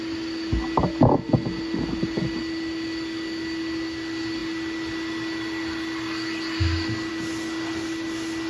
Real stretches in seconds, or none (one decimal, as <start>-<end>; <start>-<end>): 0.0-8.5